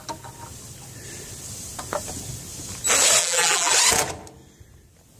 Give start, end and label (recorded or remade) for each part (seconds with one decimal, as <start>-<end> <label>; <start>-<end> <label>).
0.0-3.2 recorded; 3.2-3.7 remade; 3.7-5.2 recorded